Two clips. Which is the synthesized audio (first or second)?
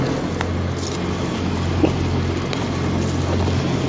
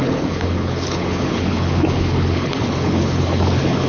second